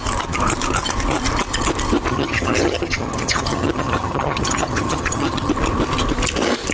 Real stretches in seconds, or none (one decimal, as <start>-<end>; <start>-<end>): 0.0-2.1; 5.5-6.7